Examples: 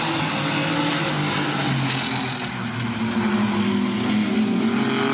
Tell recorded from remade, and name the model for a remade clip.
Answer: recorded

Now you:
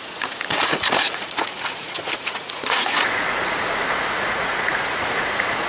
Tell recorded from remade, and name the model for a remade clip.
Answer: remade, vocoder, Vocos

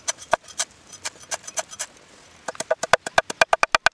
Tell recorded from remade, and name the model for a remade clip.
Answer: recorded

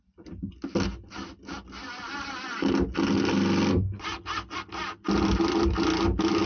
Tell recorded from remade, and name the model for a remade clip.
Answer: recorded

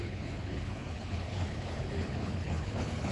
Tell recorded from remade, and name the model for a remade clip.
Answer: remade, codec, HILCodec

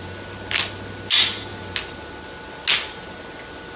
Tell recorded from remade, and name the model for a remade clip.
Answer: recorded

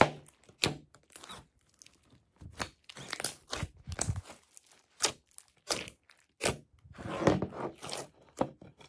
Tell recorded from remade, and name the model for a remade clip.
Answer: recorded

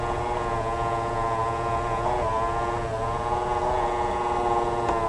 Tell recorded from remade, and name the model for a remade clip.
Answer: recorded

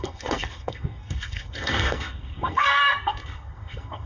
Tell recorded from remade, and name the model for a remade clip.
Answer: remade, codec, SNAC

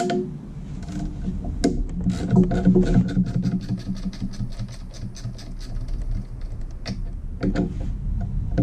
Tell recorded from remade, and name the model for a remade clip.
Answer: recorded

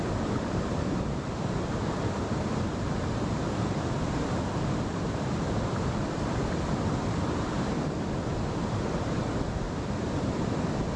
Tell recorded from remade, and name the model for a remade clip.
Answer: remade, vocoder, BigVGAN v2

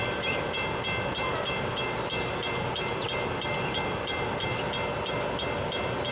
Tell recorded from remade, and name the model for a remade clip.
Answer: recorded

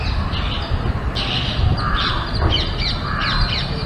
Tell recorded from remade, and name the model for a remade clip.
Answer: remade, vocoder, BigVGAN v2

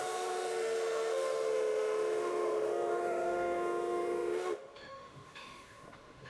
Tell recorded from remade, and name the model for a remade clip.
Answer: remade, autoencoder, DAC-VAE